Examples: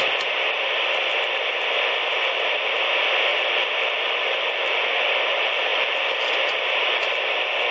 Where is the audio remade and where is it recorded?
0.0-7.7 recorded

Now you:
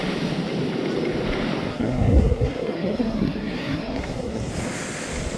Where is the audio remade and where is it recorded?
0.0-1.7 recorded; 1.7-4.5 remade; 4.5-5.4 recorded

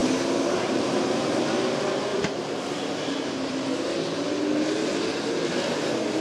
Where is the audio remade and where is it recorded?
0.0-1.4 remade; 1.4-2.1 recorded; 2.1-3.7 remade; 3.7-4.8 recorded; 4.8-5.5 remade; 5.5-6.2 recorded

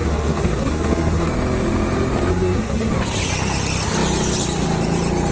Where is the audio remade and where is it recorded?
0.0-1.3 remade; 1.3-2.3 recorded; 2.3-2.9 remade; 2.9-5.3 recorded

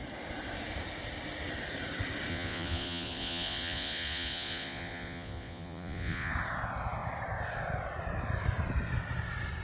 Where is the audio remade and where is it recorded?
0.0-2.3 recorded; 2.3-6.3 remade; 6.3-9.6 recorded

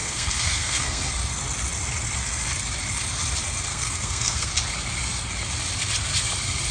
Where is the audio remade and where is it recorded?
0.0-1.1 remade; 1.1-3.7 recorded; 3.7-4.5 remade; 4.5-6.7 recorded

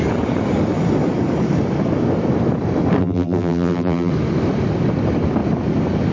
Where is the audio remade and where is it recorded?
0.0-3.0 recorded; 3.0-4.1 remade; 4.1-6.1 recorded